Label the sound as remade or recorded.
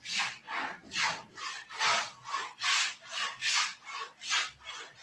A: recorded